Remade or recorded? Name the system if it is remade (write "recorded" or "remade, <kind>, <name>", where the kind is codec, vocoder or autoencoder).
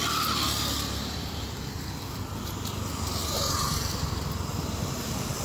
recorded